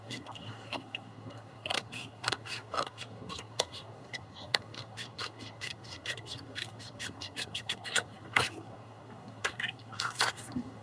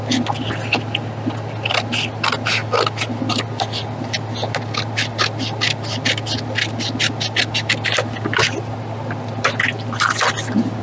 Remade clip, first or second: first